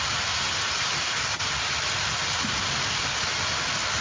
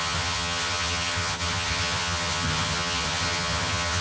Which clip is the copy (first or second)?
second